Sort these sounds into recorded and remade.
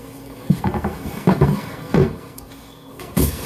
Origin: remade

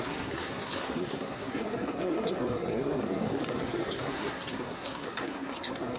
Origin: remade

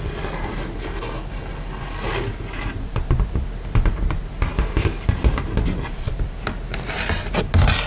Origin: recorded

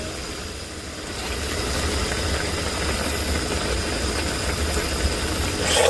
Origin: recorded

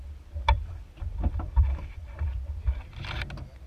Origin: recorded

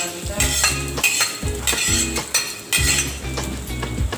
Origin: recorded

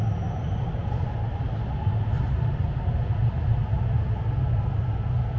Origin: recorded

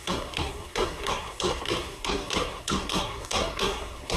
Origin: remade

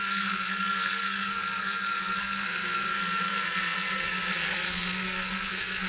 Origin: remade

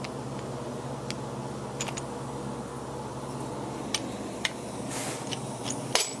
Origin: recorded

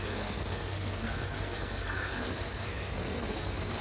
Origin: remade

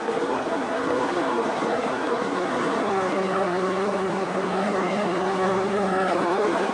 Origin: remade